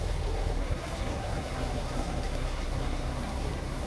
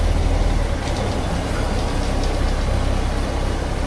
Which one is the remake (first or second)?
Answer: first